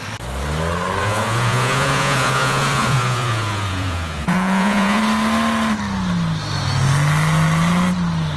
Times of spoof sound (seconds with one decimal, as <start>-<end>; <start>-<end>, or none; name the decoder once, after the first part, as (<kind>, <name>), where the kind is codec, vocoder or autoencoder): 1.0-5.0 (vocoder, Vocos)